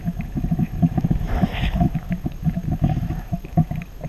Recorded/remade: remade